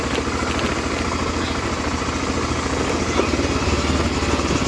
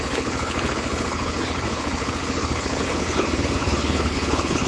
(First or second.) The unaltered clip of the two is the first